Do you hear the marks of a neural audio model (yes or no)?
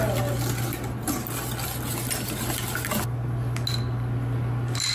no